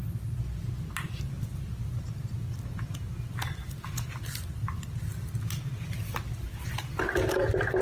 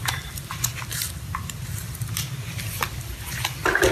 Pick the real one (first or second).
first